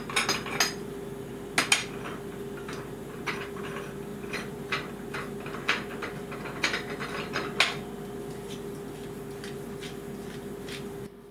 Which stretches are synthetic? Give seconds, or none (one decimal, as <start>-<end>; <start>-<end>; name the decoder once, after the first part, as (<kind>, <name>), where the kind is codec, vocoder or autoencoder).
3.0-3.6 (vocoder, BigVGAN v2); 4.1-4.9

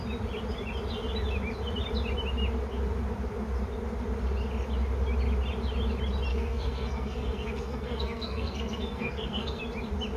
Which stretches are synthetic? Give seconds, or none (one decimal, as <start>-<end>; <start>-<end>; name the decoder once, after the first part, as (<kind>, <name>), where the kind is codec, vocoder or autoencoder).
6.3-9.6 (codec, SNAC)

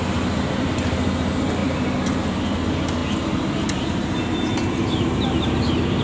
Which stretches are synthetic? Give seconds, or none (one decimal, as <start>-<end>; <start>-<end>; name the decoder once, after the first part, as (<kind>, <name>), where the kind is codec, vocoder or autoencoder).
none

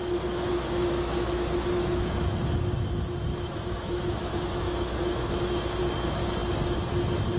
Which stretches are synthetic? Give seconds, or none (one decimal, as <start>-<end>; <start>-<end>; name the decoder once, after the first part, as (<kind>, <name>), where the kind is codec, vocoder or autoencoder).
0.0-2.4 (autoencoder, DAC-VAE); 3.3-5.8